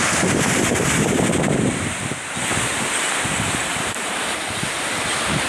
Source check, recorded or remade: remade